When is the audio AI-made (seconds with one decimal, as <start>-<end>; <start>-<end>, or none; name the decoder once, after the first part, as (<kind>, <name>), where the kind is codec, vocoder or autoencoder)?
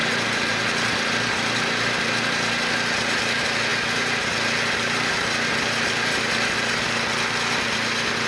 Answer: none